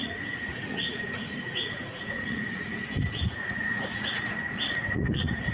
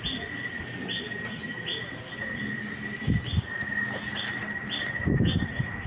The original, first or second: second